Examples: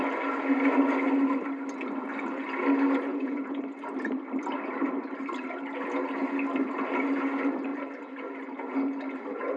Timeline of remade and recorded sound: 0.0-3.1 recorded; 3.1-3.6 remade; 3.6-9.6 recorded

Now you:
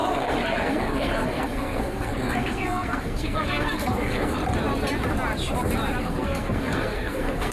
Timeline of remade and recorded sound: 0.0-4.4 remade; 4.4-6.0 recorded; 6.0-7.5 remade